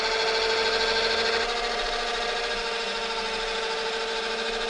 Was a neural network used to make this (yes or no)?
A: no